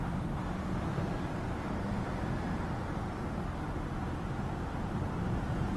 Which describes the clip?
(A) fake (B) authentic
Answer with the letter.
A